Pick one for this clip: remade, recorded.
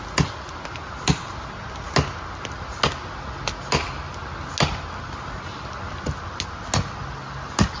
recorded